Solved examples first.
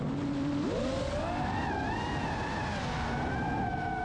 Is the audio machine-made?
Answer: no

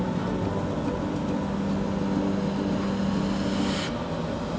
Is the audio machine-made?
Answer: no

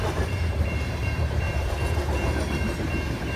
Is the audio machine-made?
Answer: yes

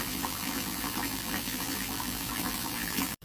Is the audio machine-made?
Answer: yes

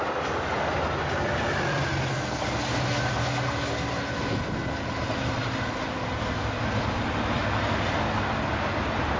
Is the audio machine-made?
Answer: no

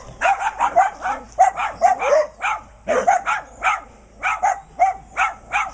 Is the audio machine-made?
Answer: no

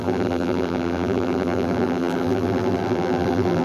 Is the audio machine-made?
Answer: yes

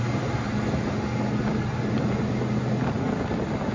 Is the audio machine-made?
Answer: no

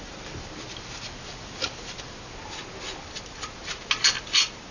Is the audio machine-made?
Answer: no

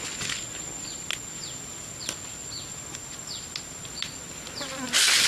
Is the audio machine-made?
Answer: no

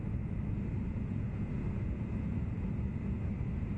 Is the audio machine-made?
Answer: no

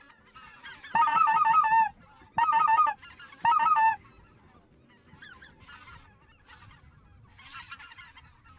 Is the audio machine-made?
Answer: no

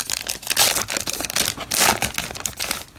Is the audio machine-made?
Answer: no